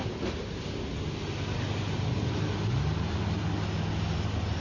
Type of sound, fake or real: real